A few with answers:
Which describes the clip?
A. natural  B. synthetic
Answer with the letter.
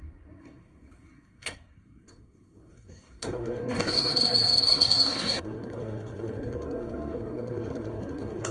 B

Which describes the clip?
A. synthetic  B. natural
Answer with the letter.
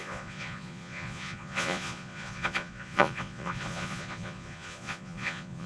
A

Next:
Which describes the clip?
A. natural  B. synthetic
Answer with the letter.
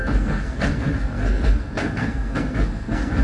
B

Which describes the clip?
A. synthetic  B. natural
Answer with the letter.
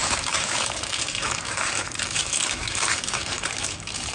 A